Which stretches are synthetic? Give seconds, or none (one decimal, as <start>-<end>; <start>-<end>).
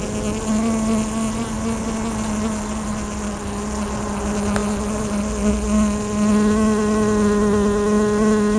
none